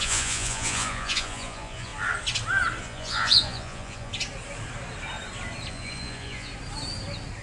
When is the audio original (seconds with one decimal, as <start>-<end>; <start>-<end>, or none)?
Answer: 1.9-2.8; 4.1-5.7; 6.5-7.4